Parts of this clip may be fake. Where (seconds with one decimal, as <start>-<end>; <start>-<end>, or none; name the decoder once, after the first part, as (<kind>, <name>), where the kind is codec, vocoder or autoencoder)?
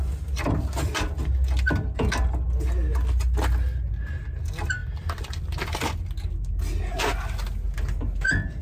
4.8-6.0 (vocoder, BigVGAN v2)